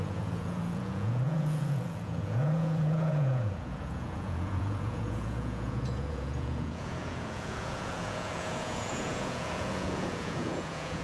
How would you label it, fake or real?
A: fake